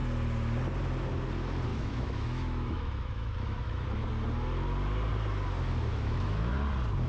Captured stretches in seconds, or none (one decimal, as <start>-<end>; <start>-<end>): 0.0-1.7; 4.1-5.9; 6.5-7.1